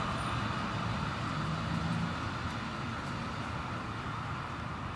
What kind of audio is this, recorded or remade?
recorded